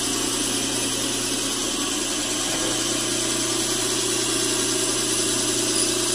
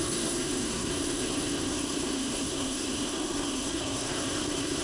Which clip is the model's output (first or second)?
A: second